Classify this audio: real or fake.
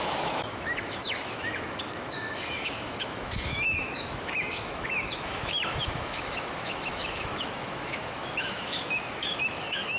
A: fake